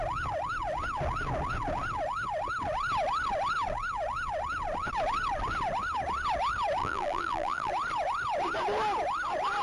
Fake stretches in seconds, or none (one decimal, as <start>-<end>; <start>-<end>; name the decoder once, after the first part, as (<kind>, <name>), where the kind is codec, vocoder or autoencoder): 6.8-7.7 (vocoder, BigVGAN v2)